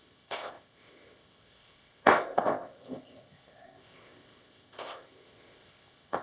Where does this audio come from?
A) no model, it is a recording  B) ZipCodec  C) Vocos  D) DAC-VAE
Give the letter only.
B